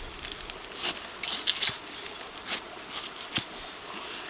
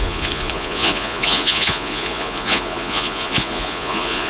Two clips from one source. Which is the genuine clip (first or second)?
first